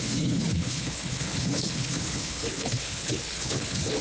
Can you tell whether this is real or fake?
fake